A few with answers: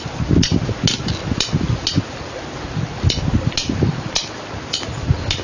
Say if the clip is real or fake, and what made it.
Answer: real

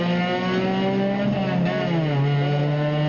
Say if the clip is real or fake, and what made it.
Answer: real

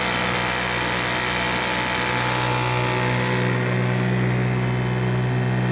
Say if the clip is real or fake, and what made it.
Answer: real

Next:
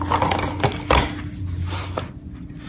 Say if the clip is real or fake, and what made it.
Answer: real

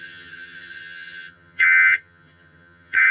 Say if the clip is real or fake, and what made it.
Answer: fake, vocoder, HiFi-GAN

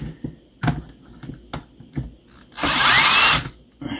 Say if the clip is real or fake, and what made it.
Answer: real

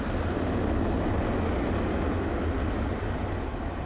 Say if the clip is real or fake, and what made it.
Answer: real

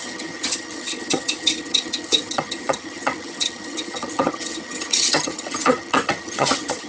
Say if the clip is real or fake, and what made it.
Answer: fake, vocoder, HiFi-GAN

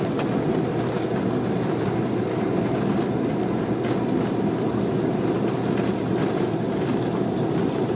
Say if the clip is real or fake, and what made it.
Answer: real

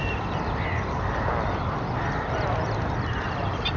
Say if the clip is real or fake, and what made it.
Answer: real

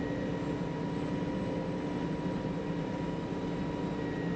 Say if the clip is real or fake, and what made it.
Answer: real